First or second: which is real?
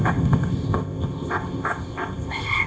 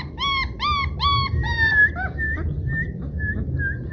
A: second